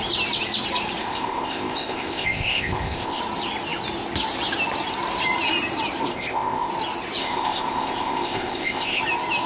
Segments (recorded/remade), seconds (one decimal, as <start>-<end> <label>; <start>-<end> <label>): 0.0-1.0 recorded; 1.0-3.2 remade; 3.2-6.1 recorded; 6.1-6.7 remade; 6.7-7.2 recorded; 7.2-9.0 remade; 9.0-9.5 recorded